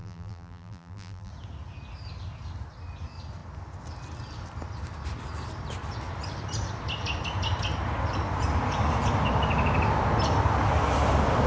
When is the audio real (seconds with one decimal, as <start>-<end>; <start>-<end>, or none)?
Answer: 1.3-11.5